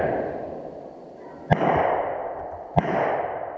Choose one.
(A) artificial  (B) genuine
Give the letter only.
B